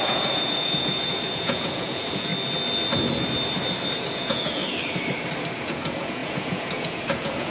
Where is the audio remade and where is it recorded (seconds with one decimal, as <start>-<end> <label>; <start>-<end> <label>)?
0.0-2.3 remade; 2.3-4.1 recorded; 4.1-4.6 remade; 4.6-5.5 recorded; 5.5-7.5 remade